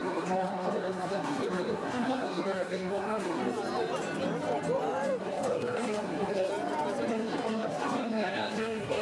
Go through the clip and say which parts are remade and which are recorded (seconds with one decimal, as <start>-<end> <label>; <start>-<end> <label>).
0.0-3.4 remade; 3.4-5.2 recorded; 5.2-6.5 remade; 6.5-7.1 recorded; 7.1-9.0 remade